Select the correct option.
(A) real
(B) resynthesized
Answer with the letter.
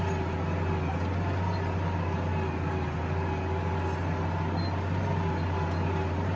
A